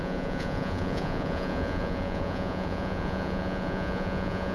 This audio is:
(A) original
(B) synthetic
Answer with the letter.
B